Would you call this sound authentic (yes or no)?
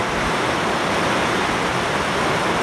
yes